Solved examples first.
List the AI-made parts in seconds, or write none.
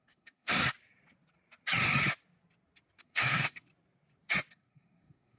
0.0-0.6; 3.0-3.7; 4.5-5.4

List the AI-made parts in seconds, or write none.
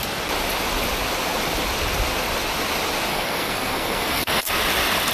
3.1-4.5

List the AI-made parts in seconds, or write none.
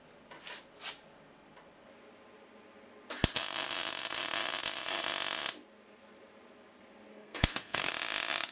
7.1-7.9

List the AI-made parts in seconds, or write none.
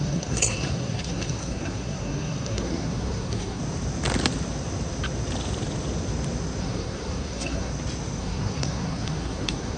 0.0-3.6; 6.6-7.7; 8.2-9.8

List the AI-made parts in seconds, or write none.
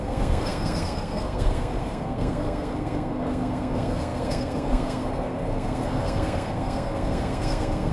0.0-7.9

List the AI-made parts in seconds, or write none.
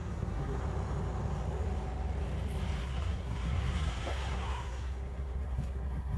0.0-0.6; 2.8-6.2